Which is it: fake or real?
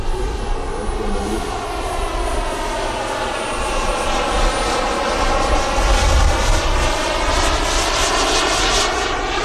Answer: real